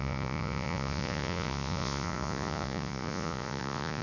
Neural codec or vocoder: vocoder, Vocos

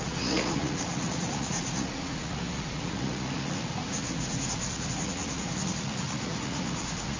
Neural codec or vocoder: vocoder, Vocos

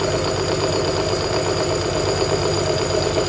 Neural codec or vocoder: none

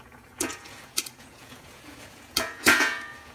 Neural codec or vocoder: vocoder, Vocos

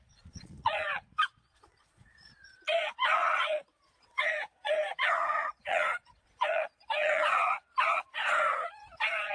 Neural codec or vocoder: vocoder, Vocos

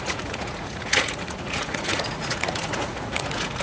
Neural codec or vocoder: vocoder, Vocos